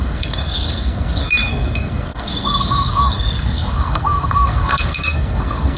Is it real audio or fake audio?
fake